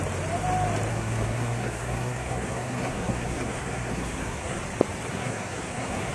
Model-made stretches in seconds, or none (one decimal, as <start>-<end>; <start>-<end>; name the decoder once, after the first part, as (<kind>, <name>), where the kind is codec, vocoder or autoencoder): 0.9-4.6 (codec, SNAC); 5.1-6.1